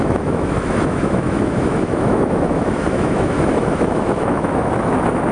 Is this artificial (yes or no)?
yes